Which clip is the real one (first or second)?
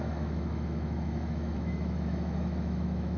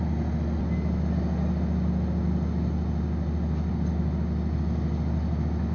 second